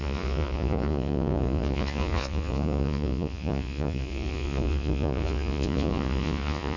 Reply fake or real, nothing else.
fake